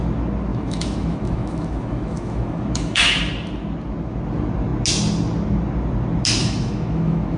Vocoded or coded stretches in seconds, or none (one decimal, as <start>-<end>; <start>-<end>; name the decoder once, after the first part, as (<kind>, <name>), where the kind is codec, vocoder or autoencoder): 0.5-3.2 (autoencoder, DAC-VAE); 6.4-7.4